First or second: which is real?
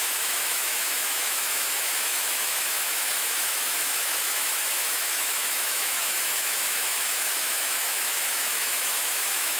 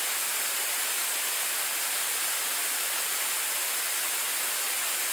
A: second